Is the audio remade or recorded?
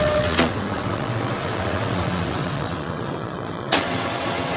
remade